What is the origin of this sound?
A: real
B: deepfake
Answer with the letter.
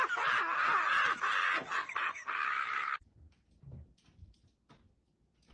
A